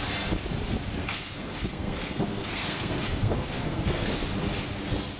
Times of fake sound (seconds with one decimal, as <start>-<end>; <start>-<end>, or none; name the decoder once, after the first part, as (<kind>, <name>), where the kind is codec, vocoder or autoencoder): 1.0-4.1 (codec, SNAC)